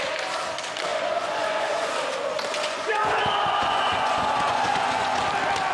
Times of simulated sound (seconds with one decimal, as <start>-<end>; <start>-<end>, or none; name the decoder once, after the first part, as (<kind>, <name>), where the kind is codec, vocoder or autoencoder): 0.9-1.9 (vocoder, Vocos); 2.5-5.2